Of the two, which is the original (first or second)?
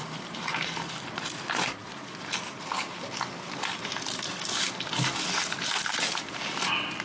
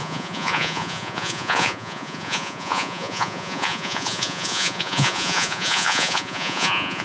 first